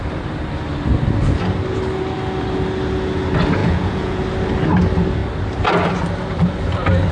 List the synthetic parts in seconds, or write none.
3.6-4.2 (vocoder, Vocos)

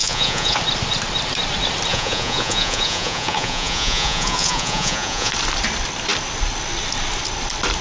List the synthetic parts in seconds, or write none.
0.0-0.6 (vocoder, Vocos); 1.9-5.3

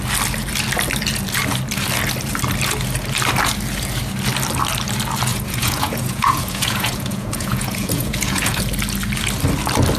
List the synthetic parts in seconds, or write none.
5.3-8.6 (vocoder, Vocos)

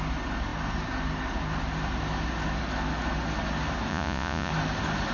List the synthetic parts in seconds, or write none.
3.9-4.5 (vocoder, Vocos)

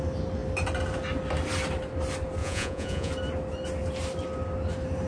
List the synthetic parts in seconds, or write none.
2.4-3.1 (vocoder, Vocos)

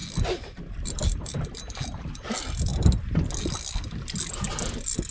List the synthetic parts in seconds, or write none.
none